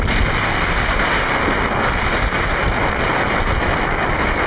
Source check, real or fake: real